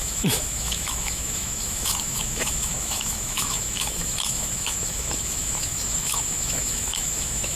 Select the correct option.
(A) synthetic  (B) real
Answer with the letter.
A